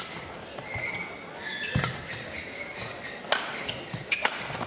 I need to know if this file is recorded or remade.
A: recorded